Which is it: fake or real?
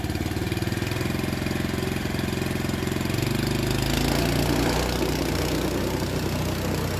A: real